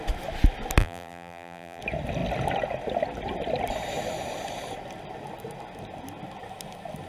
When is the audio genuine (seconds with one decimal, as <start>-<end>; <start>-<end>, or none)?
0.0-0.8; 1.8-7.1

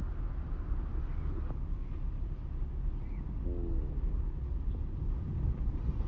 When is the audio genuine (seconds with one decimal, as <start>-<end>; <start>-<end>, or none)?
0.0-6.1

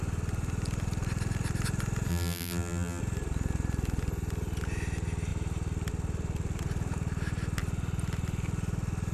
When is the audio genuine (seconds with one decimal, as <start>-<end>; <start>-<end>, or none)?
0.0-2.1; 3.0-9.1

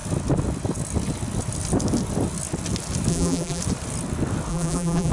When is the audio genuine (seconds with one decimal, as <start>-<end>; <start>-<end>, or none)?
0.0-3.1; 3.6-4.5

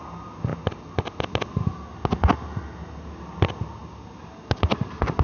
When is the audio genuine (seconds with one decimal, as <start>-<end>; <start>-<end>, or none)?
0.0-5.2